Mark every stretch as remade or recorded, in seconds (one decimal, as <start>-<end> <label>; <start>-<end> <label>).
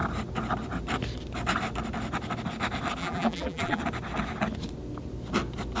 0.0-3.0 recorded; 3.0-3.8 remade; 3.8-5.8 recorded